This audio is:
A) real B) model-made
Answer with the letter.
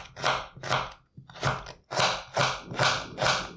A